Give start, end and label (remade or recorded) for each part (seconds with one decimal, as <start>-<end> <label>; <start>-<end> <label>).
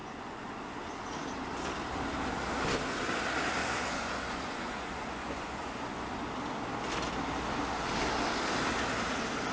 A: 0.0-0.6 remade; 0.6-3.6 recorded; 3.6-6.2 remade; 6.2-9.5 recorded